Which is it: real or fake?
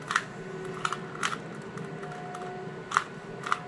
real